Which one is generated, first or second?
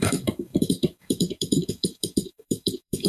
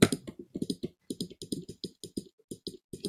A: first